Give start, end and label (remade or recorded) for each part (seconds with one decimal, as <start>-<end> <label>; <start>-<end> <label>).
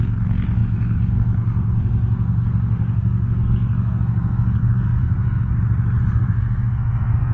0.0-5.5 remade; 5.5-6.0 recorded; 6.0-7.3 remade